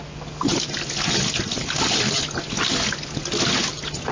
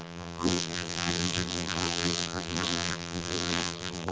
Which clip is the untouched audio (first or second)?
first